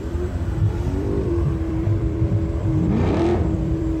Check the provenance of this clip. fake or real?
fake